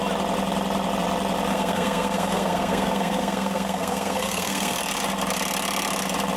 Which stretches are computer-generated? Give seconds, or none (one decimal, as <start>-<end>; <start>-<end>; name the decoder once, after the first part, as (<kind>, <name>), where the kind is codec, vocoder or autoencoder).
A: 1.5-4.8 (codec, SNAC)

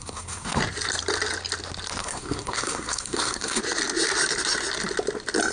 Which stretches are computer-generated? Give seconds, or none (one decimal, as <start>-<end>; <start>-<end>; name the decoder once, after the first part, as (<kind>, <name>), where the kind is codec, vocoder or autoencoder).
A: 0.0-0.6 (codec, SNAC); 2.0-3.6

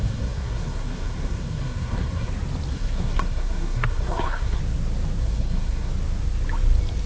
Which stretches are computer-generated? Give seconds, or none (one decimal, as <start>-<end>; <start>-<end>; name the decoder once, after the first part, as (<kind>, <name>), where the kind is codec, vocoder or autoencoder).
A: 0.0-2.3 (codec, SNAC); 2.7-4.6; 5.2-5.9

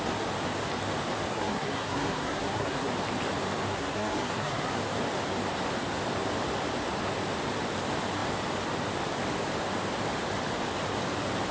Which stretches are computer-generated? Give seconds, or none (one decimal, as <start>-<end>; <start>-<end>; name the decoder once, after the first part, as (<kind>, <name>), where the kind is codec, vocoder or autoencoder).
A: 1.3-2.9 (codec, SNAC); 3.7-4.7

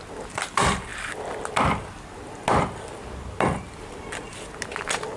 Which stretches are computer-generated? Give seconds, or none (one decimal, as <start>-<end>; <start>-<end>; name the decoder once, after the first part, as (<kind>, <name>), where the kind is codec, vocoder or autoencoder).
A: none